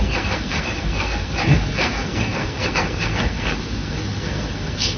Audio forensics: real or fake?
fake